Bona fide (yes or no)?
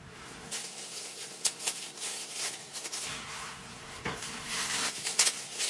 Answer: no